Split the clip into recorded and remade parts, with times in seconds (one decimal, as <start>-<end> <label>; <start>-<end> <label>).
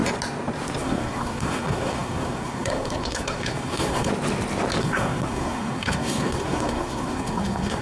0.0-0.8 recorded; 0.8-4.1 remade; 4.1-4.8 recorded; 4.8-7.8 remade